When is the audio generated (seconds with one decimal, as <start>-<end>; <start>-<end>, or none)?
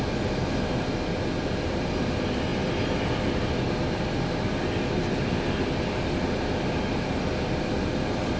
none